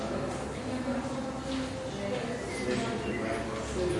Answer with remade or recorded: recorded